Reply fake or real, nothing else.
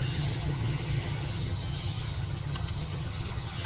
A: fake